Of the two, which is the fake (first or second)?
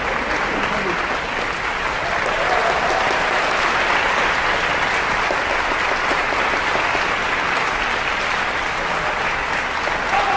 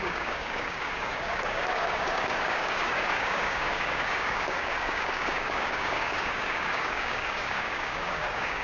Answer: second